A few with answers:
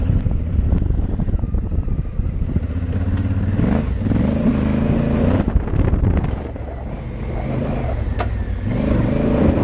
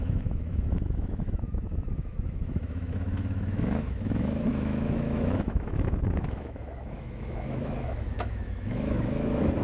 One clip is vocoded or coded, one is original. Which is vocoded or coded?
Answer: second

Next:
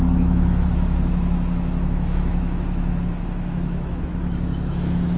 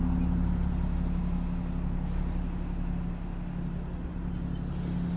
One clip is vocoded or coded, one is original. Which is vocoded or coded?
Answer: first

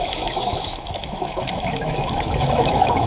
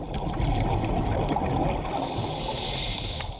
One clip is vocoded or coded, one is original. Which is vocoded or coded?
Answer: first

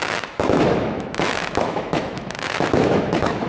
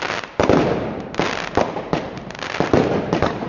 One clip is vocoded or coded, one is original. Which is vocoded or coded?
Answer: first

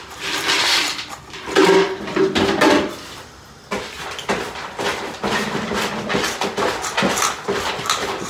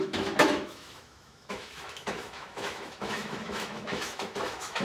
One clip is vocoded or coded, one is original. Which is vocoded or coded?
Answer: second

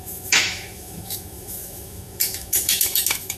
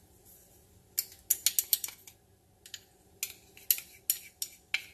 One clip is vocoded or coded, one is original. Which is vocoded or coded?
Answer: first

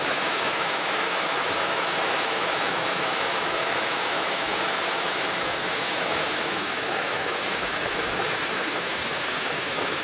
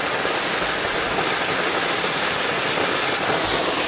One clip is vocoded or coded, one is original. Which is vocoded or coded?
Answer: first